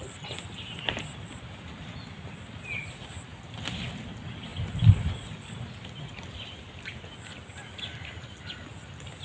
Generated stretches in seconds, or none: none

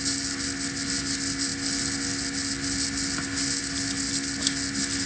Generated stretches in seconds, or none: none

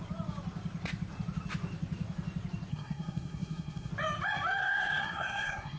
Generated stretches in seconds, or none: 2.7-3.9 (codec, SNAC); 4.6-5.8